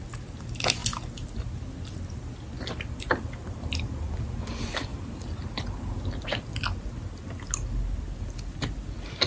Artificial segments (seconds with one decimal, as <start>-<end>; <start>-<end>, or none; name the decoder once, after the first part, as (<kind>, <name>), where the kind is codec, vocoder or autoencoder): none